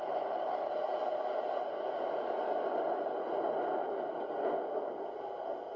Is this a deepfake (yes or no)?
no